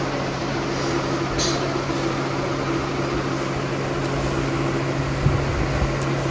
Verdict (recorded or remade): recorded